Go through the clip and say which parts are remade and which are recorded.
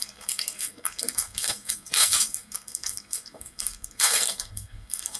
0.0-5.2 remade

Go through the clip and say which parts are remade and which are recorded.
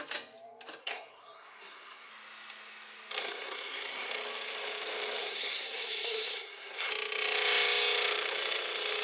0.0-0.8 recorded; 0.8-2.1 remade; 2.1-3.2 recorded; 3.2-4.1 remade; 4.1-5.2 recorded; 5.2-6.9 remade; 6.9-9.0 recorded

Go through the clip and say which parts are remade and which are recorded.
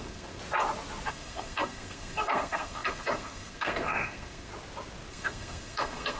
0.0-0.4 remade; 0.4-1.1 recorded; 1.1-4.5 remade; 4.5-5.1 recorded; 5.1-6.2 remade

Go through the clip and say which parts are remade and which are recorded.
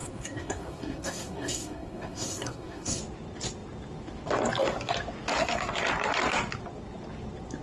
0.0-3.0 remade; 3.0-7.6 recorded